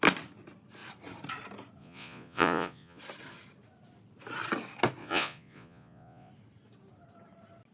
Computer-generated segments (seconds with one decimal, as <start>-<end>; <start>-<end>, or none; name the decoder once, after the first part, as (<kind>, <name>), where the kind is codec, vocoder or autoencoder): 1.8-3.0 (vocoder, Vocos); 5.0-6.3